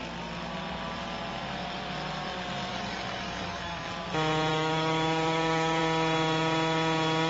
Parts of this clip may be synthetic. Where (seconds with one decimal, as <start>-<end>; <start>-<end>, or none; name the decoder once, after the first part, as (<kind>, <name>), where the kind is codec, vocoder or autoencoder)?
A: 2.7-3.9 (codec, DAC); 4.5-5.8